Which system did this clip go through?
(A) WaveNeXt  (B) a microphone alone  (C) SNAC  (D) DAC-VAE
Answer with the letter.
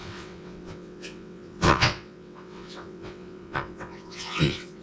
A